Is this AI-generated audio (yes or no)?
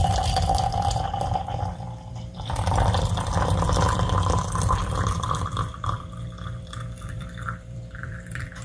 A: yes